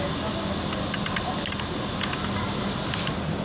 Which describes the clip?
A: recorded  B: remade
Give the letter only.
A